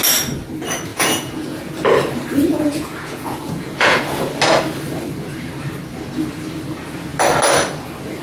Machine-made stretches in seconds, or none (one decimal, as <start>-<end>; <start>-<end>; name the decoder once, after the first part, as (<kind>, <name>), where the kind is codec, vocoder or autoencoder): 0.9-1.7 (vocoder, Vocos); 2.5-4.2